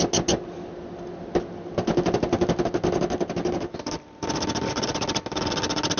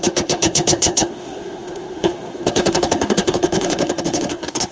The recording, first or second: first